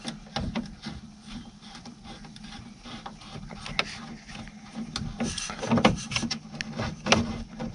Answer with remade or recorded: recorded